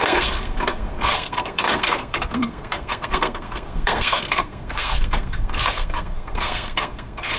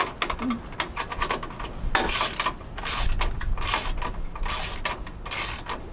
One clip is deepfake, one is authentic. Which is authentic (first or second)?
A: second